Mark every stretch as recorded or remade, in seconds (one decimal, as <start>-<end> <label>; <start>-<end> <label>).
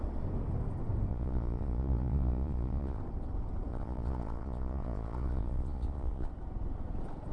0.0-1.1 recorded; 1.1-3.0 remade; 3.0-3.7 recorded; 3.7-6.3 remade; 6.3-7.3 recorded